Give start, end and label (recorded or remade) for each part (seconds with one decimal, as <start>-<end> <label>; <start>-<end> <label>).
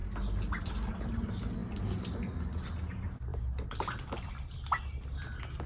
0.0-3.3 recorded; 3.3-4.3 remade; 4.3-5.7 recorded